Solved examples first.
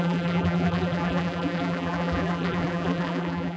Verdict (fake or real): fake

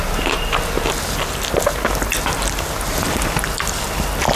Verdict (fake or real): real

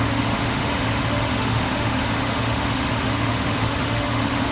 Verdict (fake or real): fake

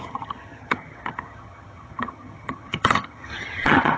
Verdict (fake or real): fake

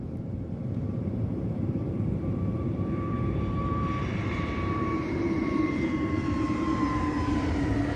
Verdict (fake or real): fake